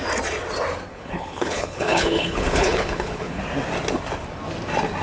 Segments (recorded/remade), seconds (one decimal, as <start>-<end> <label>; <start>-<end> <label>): 0.0-0.9 recorded; 0.9-3.4 remade; 3.4-5.0 recorded